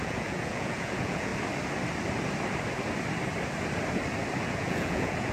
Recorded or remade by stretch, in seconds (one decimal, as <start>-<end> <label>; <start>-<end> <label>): 0.0-1.3 remade; 1.3-4.5 recorded; 4.5-5.3 remade